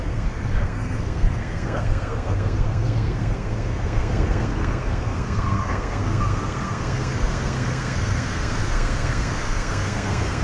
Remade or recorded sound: remade